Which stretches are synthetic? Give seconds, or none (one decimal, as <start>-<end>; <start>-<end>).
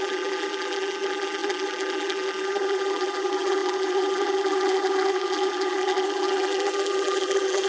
0.0-7.7